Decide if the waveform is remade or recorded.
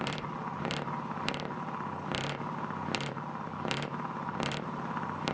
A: remade